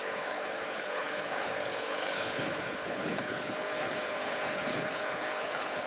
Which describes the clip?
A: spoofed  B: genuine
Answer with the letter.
A